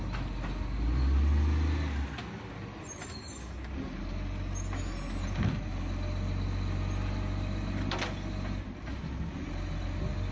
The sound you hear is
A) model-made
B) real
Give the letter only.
B